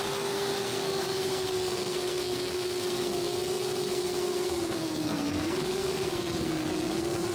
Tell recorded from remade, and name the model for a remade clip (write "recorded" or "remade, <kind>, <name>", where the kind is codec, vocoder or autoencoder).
remade, codec, SNAC